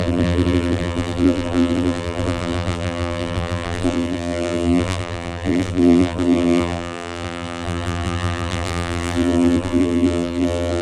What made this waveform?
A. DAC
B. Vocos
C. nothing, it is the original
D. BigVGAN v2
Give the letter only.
D